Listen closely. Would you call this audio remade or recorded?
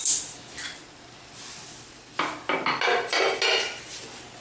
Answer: recorded